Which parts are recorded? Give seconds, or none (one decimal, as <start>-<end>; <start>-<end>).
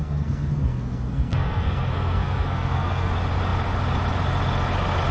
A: 3.1-5.1